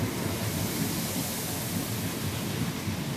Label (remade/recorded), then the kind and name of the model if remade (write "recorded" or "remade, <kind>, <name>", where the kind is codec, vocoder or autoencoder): recorded